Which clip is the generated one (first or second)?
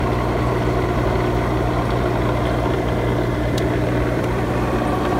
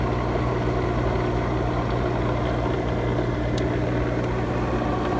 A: first